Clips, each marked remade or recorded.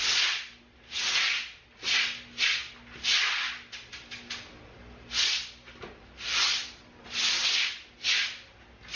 recorded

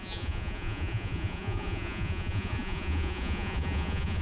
remade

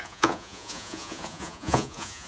remade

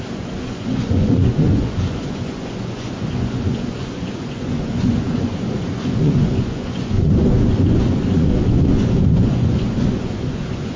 remade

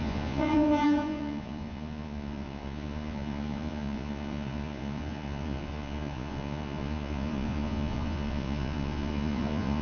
remade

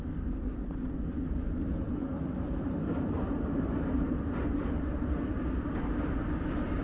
recorded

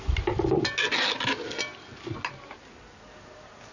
recorded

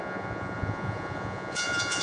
remade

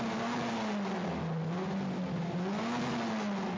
recorded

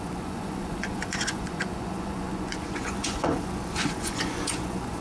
remade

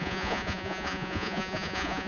remade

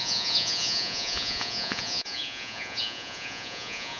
remade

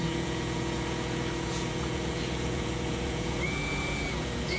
remade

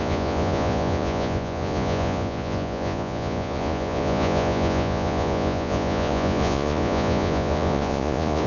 remade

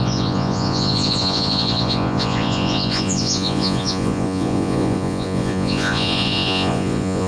remade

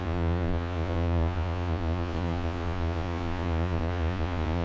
remade